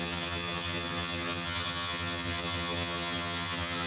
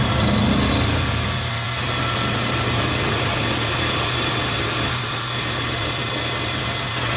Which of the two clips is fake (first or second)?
first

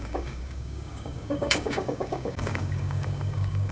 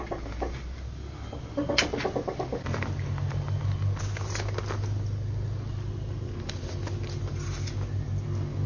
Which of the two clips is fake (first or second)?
first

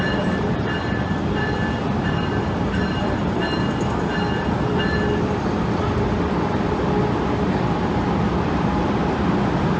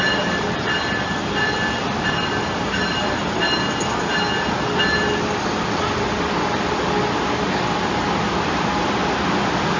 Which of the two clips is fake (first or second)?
first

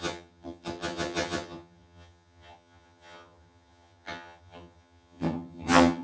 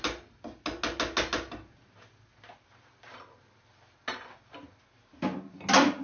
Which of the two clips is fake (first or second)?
first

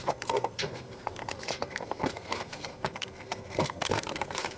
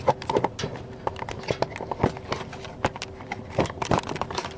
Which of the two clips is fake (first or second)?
first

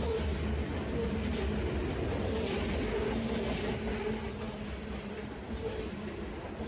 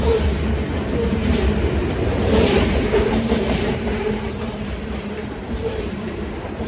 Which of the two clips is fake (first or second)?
second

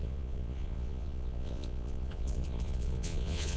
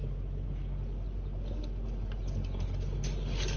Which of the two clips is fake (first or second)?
first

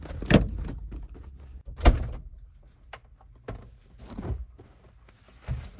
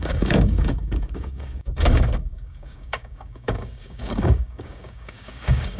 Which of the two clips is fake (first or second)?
second